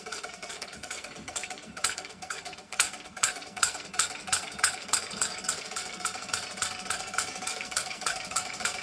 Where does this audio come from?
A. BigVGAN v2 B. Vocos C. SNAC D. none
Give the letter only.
C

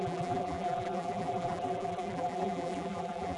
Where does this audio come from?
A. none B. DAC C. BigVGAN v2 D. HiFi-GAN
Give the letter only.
C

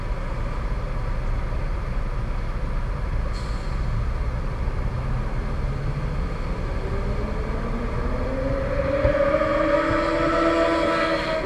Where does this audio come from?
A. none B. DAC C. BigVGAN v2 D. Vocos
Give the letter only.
A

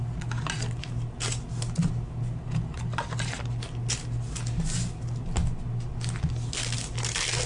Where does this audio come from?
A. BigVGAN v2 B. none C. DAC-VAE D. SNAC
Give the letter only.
B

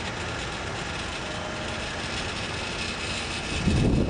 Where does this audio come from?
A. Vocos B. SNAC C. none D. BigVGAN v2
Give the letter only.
C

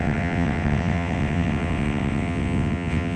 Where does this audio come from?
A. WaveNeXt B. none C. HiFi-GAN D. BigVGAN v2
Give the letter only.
A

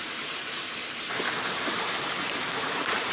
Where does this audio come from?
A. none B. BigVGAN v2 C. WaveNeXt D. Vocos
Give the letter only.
B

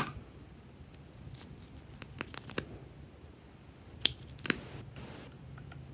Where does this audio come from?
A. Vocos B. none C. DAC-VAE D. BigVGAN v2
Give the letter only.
B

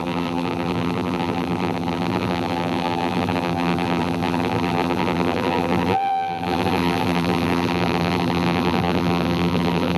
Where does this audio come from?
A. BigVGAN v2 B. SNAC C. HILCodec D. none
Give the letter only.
A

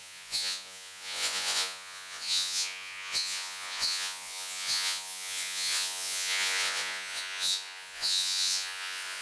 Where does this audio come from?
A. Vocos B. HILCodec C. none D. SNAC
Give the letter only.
A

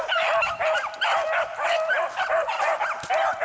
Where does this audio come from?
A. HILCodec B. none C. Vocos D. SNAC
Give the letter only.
B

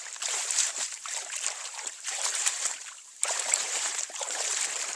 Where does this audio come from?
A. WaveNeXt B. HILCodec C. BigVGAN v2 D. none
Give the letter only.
C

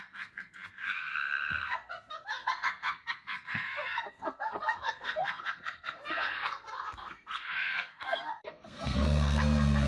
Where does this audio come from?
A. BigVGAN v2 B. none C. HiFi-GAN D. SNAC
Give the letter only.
D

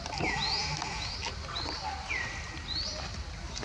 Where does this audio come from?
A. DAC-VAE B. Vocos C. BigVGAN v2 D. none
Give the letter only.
D